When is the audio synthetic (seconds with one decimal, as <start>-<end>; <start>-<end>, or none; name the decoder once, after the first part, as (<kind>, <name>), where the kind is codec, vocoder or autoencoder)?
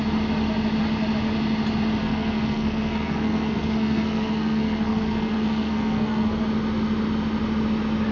2.0-6.4 (codec, SNAC)